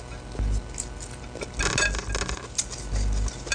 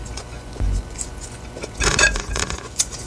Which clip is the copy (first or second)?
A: second